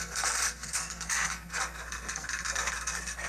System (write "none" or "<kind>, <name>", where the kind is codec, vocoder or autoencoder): codec, SNAC